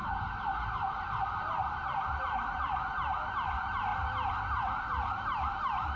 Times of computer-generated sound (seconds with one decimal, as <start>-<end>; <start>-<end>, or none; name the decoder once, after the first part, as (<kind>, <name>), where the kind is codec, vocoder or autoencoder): 1.8-2.8 (vocoder, BigVGAN v2); 3.9-5.6